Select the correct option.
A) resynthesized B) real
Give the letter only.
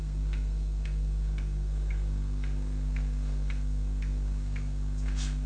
A